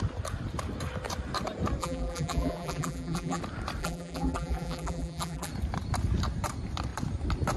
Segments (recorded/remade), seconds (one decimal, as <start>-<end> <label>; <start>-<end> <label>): 0.0-1.8 recorded; 1.8-3.4 remade; 3.4-3.8 recorded; 3.8-5.5 remade; 5.5-7.6 recorded